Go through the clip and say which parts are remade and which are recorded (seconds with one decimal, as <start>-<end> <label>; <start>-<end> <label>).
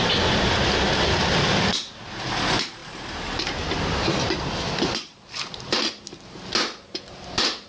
0.0-7.7 recorded